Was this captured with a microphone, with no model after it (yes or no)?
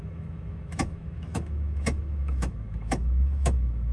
no